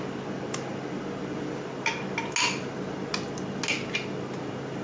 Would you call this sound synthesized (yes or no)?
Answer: no